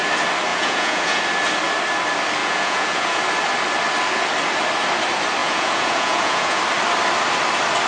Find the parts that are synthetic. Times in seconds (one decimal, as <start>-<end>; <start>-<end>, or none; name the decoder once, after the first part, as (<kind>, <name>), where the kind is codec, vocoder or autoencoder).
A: 0.5-1.2 (vocoder, Vocos); 2.4-3.2; 5.4-6.6